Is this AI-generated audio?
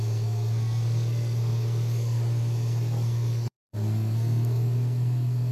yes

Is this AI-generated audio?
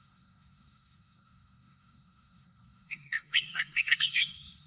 yes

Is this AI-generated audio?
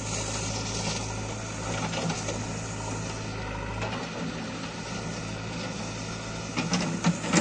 no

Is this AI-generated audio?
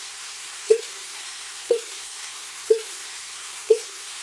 yes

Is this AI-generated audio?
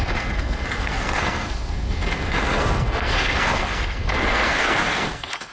yes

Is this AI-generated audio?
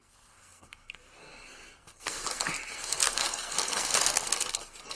yes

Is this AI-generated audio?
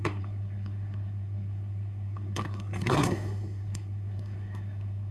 yes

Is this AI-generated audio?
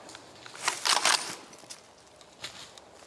no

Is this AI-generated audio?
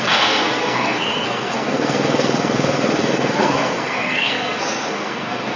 yes